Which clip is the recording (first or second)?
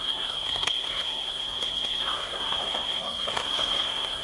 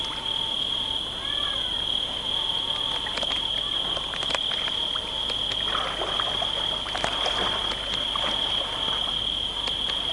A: second